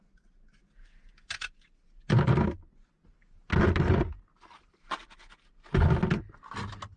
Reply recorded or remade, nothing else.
recorded